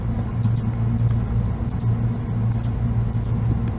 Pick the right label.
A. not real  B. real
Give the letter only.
B